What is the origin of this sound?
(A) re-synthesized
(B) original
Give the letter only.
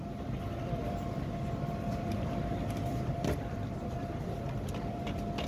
A